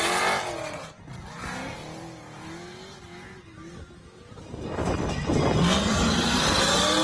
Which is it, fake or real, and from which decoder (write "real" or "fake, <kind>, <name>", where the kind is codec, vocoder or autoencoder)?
real